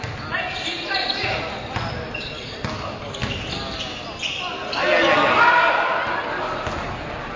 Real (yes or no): yes